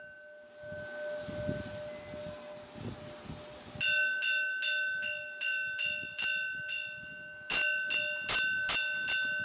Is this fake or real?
real